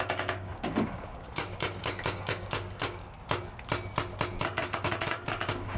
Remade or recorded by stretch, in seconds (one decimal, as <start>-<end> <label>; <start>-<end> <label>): 0.0-3.0 remade; 3.0-4.4 recorded; 4.4-5.8 remade